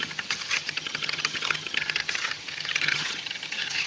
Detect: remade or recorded remade